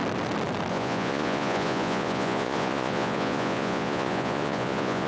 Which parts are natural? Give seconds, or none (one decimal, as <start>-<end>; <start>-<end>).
0.0-0.7